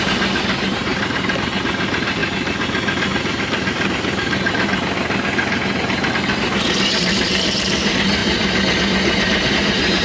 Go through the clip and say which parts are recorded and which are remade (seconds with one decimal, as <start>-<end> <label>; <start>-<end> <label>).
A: 0.0-2.2 remade; 2.2-6.1 recorded; 6.1-8.2 remade; 8.2-9.5 recorded; 9.5-10.0 remade